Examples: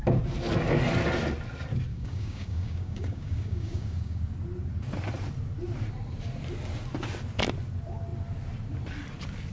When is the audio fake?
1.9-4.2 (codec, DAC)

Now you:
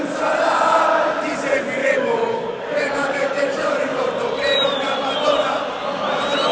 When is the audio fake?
1.8-4.0 (codec, DAC)

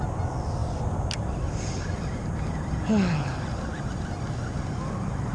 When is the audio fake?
none

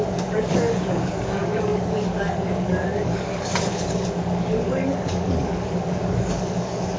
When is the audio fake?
0.0-7.0 (codec, DAC)